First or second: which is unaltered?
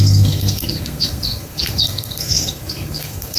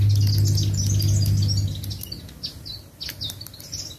second